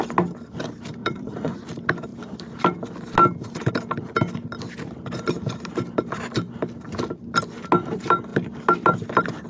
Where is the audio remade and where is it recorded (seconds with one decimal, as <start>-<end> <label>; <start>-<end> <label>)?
0.0-1.0 recorded; 1.0-1.6 remade; 1.6-9.5 recorded